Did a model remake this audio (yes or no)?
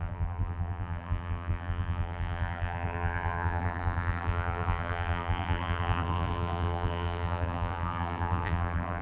yes